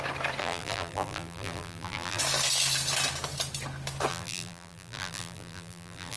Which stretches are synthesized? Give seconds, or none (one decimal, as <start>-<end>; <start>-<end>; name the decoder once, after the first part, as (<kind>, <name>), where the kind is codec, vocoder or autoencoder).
0.4-2.2 (vocoder, BigVGAN v2); 4.1-6.2